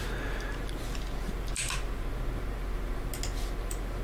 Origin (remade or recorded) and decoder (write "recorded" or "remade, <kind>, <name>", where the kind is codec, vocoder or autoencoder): recorded